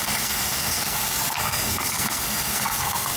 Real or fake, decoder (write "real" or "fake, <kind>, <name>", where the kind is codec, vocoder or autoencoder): fake, codec, SNAC